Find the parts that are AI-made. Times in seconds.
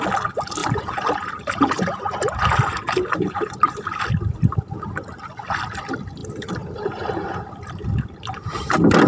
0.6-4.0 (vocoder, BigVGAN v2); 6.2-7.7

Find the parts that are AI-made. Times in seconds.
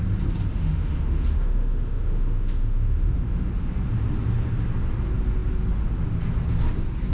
0.5-3.5 (autoencoder, DAC-VAE)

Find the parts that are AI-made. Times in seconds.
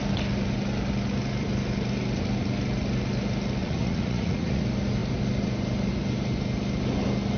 3.6-4.6 (vocoder, Vocos)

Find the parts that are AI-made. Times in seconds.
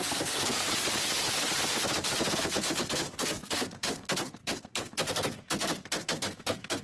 0.0-0.7 (codec, SNAC); 2.3-6.8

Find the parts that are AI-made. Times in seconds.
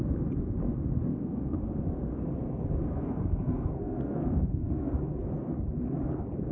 1.1-2.1 (codec, SNAC); 2.9-4.9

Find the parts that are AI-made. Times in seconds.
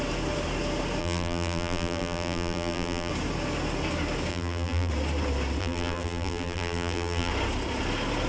1.0-3.1 (vocoder, BigVGAN v2); 4.3-4.9; 5.6-7.3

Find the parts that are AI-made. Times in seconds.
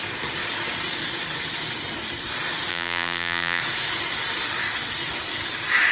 2.7-3.6 (vocoder, BigVGAN v2)